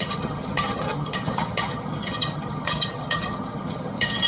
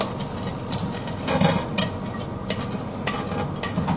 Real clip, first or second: second